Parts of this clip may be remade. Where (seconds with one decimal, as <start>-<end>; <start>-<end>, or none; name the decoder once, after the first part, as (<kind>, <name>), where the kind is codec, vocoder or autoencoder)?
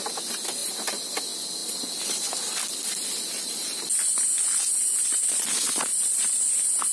1.6-4.2 (vocoder, BigVGAN v2); 5.9-6.5